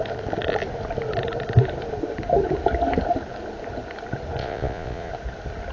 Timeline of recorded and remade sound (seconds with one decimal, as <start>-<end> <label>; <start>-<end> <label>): 0.0-4.4 recorded; 4.4-5.1 remade; 5.1-5.7 recorded